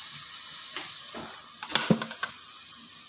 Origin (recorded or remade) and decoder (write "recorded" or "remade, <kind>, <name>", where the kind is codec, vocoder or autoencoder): recorded